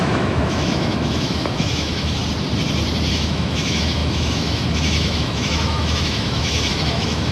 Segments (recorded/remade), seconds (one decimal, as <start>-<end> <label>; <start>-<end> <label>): 0.0-2.2 remade; 2.2-3.1 recorded; 3.1-7.3 remade